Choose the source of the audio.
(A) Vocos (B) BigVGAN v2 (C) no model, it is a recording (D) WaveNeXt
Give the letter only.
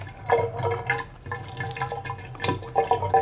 C